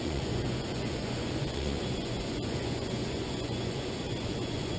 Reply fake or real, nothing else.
fake